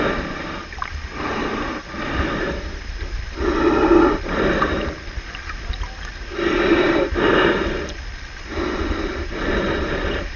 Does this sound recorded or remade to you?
recorded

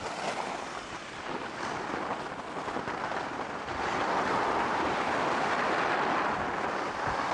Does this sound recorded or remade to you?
recorded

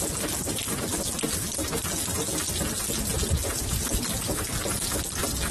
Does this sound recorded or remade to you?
recorded